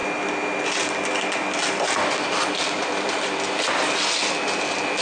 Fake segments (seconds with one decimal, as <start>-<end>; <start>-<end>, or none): none